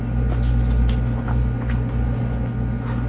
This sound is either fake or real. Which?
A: real